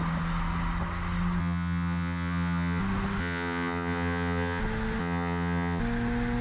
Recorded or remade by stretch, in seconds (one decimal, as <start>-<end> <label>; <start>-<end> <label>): 0.0-1.4 recorded; 1.4-2.8 remade; 2.8-3.2 recorded; 3.2-4.6 remade; 4.6-5.0 recorded; 5.0-5.8 remade; 5.8-6.4 recorded